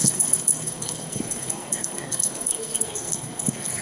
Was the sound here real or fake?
fake